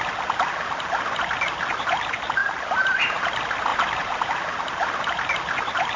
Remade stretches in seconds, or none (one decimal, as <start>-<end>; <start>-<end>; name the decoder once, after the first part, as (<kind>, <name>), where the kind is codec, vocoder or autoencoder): 3.7-4.3 (vocoder, BigVGAN v2)